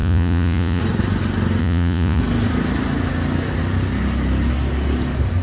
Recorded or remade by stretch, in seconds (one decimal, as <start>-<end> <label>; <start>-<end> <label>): 0.0-0.8 remade; 0.8-1.6 recorded; 1.6-2.2 remade; 2.2-5.4 recorded

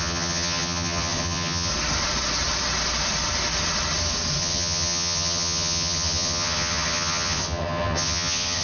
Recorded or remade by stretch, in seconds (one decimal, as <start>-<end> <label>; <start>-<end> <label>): 0.0-1.7 remade; 1.7-4.4 recorded; 4.4-8.6 remade

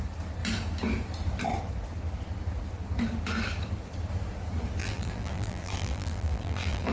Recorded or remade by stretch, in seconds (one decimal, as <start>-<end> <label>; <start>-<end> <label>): 0.0-4.8 recorded; 4.8-6.9 remade

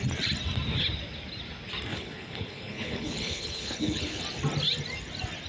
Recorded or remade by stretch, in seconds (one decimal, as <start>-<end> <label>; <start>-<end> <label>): 0.0-1.9 recorded; 1.9-4.2 remade; 4.2-5.5 recorded

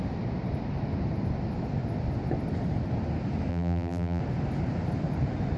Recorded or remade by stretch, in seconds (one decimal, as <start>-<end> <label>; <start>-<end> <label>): 0.0-3.5 recorded; 3.5-4.2 remade; 4.2-5.6 recorded